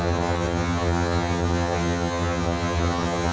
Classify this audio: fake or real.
fake